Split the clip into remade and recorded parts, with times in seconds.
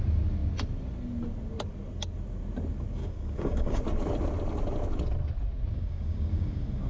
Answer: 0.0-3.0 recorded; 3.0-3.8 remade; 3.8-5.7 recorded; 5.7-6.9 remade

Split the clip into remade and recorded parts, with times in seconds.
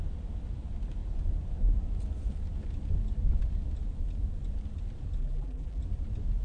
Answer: 0.0-5.2 recorded; 5.2-5.8 remade; 5.8-6.4 recorded